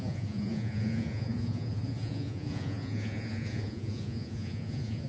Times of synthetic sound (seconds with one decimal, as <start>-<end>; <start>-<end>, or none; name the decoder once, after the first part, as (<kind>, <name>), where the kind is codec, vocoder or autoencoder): 0.0-5.1 (vocoder, Vocos)